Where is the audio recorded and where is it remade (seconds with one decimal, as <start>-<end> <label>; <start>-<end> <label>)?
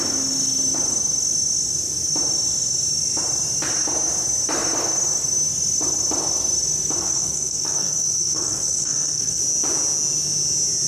0.0-7.0 recorded; 7.0-9.4 remade; 9.4-10.9 recorded